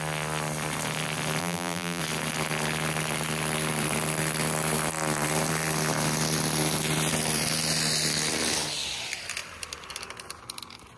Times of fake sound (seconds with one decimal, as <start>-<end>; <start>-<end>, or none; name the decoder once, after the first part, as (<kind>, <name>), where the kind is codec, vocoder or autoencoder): 1.4-2.0 (vocoder, BigVGAN v2)